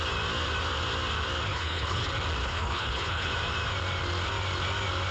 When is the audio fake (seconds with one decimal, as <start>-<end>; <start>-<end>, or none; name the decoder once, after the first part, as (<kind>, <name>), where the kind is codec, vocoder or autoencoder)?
1.5-2.0 (codec, HILCodec); 2.4-3.3